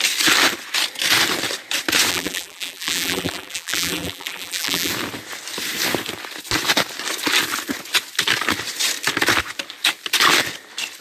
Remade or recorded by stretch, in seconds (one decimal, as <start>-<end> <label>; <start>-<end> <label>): 0.0-2.1 recorded; 2.1-4.9 remade; 4.9-11.0 recorded